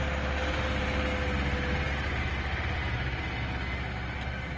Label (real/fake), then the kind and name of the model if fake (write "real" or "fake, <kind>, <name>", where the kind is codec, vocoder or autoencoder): real